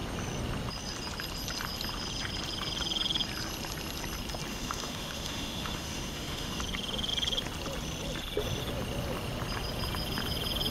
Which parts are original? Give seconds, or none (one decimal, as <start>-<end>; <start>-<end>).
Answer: 0.0-4.5; 6.6-10.7

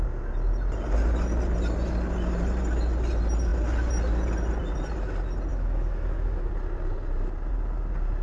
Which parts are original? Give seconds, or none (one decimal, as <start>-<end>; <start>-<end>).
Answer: 0.0-5.5; 6.5-8.2

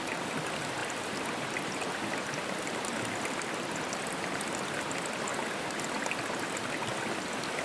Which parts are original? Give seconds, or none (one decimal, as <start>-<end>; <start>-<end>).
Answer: 0.0-7.6